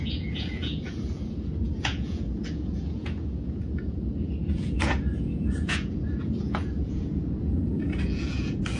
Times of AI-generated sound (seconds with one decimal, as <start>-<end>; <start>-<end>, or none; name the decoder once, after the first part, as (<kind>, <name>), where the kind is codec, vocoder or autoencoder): 0.0-8.8 (vocoder, Vocos)